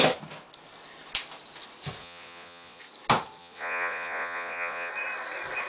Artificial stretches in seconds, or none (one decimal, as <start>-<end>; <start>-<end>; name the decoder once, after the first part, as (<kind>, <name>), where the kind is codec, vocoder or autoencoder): 2.0-2.8 (vocoder, Vocos); 3.4-4.9